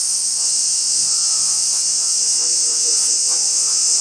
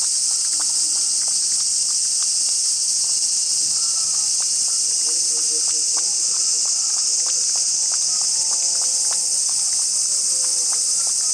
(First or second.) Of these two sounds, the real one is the second